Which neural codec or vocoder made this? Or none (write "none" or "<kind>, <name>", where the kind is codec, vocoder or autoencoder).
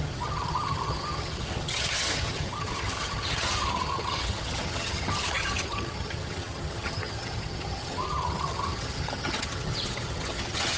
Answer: vocoder, HiFi-GAN